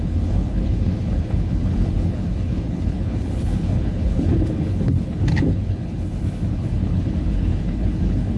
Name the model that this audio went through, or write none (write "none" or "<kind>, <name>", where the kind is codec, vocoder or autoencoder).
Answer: codec, HILCodec